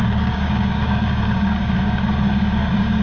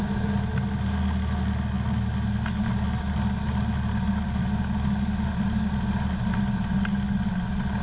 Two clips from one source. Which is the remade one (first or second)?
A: first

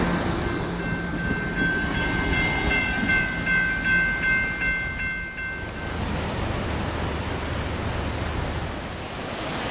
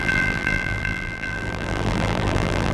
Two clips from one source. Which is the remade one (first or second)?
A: second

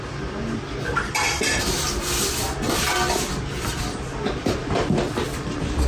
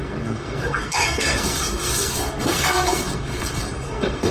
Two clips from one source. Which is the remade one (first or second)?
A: second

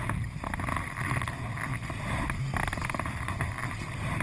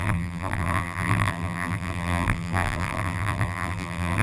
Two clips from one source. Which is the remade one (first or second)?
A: second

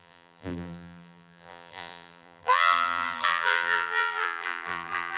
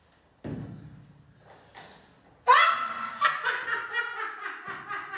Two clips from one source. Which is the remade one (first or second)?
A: first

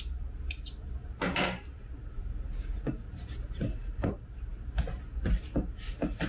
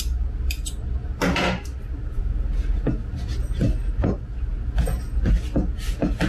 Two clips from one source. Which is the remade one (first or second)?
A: first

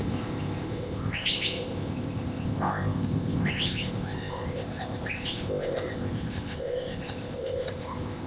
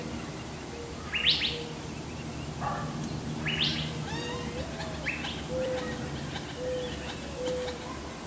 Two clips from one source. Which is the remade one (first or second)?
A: first